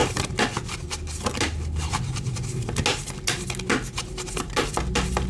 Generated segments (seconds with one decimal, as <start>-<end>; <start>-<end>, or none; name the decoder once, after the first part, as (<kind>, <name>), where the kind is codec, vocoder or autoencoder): none